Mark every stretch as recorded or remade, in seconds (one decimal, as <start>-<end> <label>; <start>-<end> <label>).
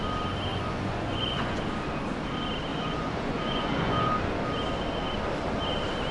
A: 0.0-0.5 recorded; 0.5-1.6 remade; 1.6-2.7 recorded; 2.7-4.1 remade; 4.1-6.1 recorded